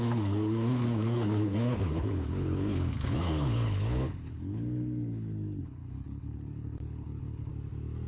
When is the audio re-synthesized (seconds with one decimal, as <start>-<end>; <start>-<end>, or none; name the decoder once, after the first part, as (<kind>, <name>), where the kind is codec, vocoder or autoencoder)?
0.0-7.5 (codec, HILCodec)